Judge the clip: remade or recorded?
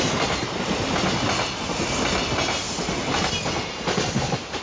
recorded